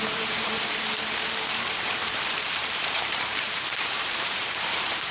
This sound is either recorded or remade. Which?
remade